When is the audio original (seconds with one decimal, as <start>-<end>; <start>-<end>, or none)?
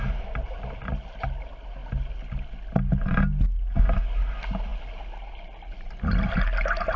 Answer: 0.0-7.0